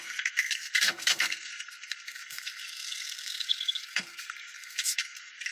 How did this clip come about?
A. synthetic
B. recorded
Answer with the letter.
A